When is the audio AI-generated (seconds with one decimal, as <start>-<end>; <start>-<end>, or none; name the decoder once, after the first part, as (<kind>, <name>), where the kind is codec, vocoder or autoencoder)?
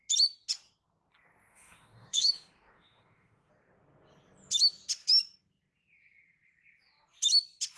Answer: 1.5-3.5 (autoencoder, DAC-VAE)